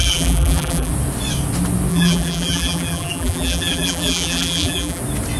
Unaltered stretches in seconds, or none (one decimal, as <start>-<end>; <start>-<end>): 0.9-1.9; 5.0-5.4